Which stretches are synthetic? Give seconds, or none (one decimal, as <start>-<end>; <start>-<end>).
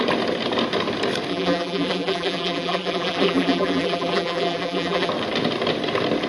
1.3-5.1